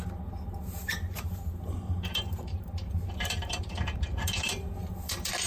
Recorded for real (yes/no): no